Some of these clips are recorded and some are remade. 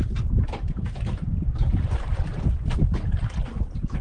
recorded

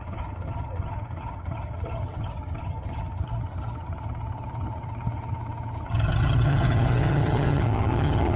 remade